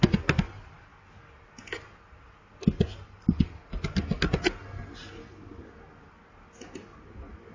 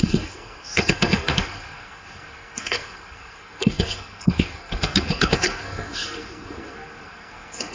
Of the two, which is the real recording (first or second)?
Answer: first